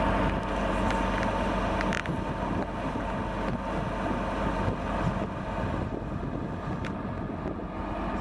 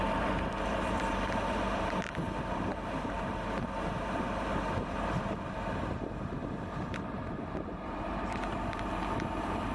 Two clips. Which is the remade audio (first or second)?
second